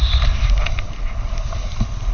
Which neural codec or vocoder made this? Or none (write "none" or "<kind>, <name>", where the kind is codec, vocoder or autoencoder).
none